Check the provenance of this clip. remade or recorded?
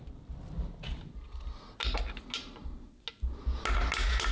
recorded